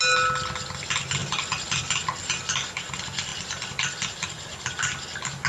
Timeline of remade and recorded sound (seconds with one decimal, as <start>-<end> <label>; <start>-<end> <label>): 0.0-1.2 recorded; 1.2-1.8 remade; 1.8-3.3 recorded; 3.3-4.7 remade; 4.7-5.5 recorded